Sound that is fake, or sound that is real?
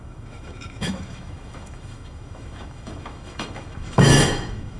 fake